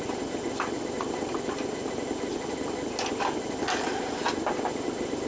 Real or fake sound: real